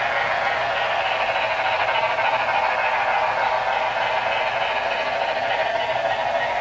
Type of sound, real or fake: real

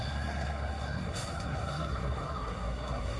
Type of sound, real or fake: fake